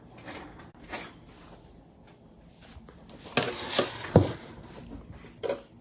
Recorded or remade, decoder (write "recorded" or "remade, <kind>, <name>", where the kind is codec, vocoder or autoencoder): recorded